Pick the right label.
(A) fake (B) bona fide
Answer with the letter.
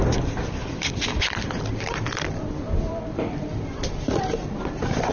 A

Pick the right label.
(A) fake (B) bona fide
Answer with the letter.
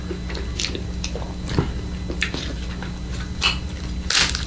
B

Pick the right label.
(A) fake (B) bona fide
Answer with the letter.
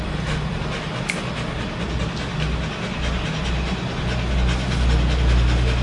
B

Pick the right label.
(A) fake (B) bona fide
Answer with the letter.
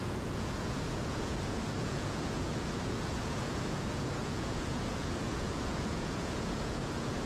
A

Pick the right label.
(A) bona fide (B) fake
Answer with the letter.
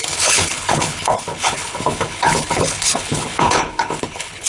B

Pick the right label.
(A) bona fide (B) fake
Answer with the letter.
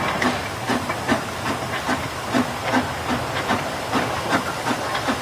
A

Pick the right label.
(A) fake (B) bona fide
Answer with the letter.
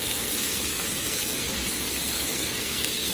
A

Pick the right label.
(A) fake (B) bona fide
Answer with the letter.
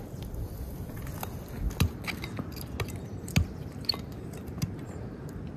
B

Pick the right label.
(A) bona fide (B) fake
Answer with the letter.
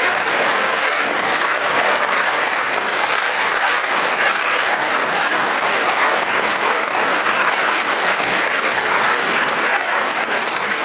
B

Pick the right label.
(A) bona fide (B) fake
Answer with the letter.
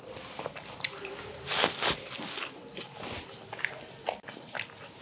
A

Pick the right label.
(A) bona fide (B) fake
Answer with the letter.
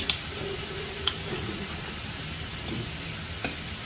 A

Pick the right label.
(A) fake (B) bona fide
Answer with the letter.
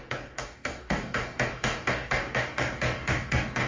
A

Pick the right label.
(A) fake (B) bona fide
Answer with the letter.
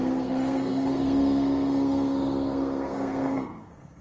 A